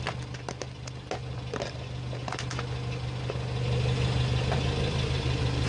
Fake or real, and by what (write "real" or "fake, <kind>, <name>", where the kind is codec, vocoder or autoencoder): real